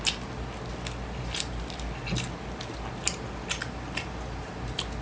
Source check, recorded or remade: recorded